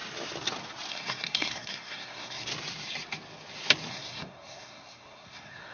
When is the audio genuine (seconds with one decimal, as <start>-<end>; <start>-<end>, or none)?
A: 0.0-0.9; 2.5-3.9